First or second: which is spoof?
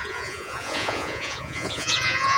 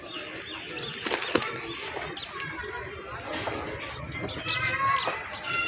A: first